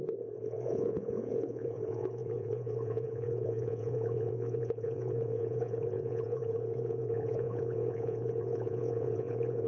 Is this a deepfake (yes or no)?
yes